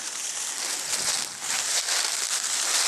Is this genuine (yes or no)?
yes